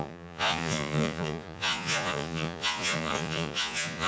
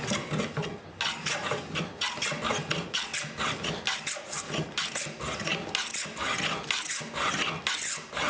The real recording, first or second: second